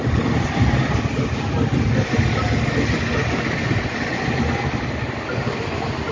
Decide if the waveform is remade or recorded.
recorded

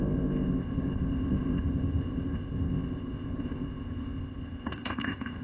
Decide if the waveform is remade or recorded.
remade